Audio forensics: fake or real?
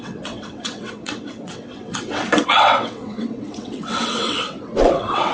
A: fake